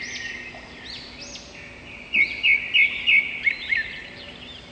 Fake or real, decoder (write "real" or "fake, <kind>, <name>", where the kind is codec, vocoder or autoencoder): real